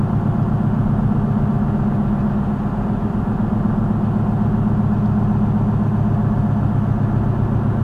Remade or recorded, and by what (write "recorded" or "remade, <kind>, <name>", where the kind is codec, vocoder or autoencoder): recorded